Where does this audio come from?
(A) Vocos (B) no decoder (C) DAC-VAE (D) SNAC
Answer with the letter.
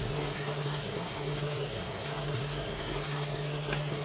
D